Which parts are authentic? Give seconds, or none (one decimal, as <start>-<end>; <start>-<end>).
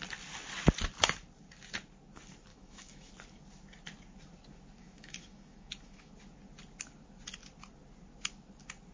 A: 0.0-2.5; 3.1-4.8; 6.1-8.9